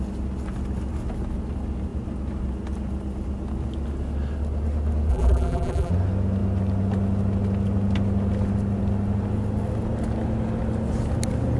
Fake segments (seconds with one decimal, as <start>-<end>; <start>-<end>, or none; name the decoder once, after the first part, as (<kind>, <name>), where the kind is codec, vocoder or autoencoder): 5.1-5.9 (vocoder, BigVGAN v2)